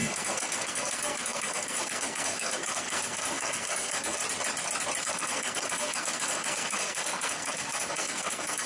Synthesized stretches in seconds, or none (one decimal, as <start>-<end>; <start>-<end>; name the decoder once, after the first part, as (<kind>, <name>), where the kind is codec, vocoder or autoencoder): 0.0-4.2 (codec, SNAC); 5.0-8.7